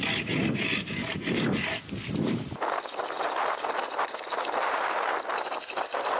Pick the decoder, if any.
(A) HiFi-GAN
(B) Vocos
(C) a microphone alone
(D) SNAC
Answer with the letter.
C